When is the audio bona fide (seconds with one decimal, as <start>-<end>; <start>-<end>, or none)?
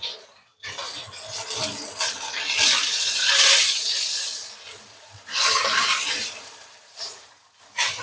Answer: 0.0-5.6; 7.3-8.0